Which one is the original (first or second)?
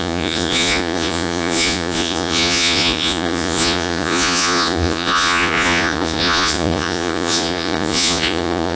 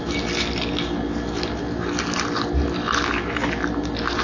second